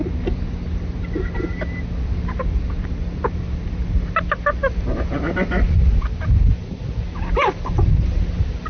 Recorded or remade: recorded